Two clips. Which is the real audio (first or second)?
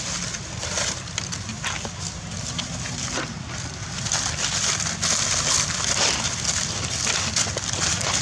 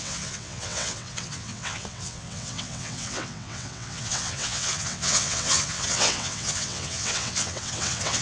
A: first